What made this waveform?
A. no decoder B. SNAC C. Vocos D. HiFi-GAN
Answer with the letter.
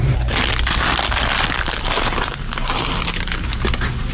A